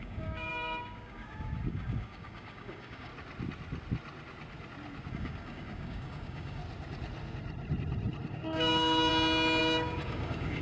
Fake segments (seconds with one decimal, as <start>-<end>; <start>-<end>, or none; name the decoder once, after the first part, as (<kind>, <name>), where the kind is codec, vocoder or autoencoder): 0.0-3.1 (codec, DAC); 5.1-6.6; 8.3-9.1; 9.6-10.6